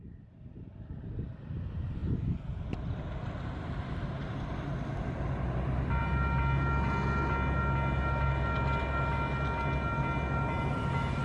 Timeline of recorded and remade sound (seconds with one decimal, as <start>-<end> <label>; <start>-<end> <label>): 0.0-11.2 recorded